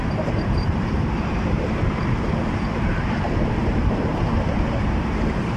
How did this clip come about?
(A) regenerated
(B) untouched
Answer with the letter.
A